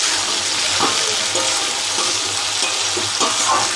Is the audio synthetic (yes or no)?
no